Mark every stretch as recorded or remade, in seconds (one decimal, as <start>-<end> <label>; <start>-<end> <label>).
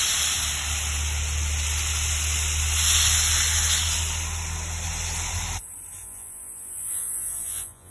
0.0-6.0 recorded; 6.0-7.9 remade